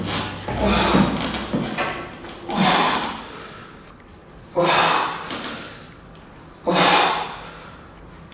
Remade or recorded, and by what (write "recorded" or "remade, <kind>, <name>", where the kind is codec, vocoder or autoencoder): recorded